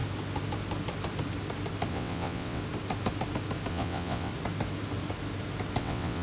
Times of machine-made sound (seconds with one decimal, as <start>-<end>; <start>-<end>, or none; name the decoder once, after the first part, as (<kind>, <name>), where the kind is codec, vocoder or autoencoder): 1.9-2.6 (vocoder, WaveNeXt); 3.7-4.3; 5.8-6.2